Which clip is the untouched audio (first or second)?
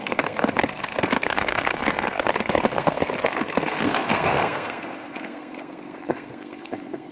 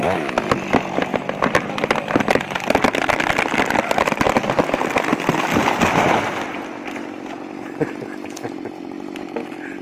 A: second